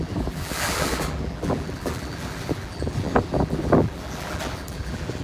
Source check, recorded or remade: remade